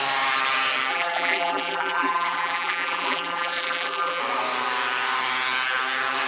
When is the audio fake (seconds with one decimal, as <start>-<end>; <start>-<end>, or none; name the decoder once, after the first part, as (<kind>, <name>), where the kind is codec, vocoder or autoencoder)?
0.9-4.2 (vocoder, BigVGAN v2)